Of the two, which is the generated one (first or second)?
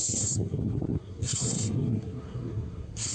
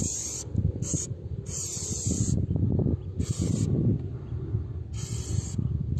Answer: first